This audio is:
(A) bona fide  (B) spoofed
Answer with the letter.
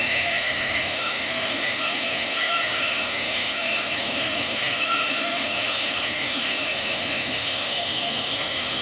B